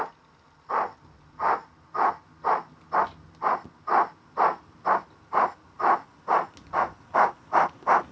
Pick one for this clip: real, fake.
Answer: real